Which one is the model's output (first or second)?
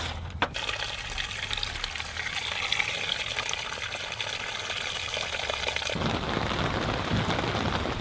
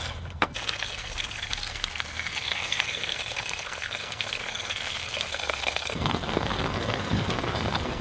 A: second